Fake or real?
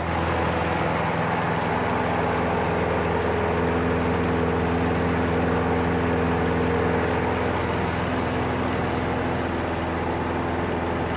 real